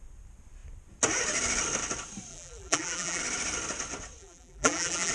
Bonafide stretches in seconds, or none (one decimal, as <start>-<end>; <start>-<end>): 0.0-2.3; 3.2-4.2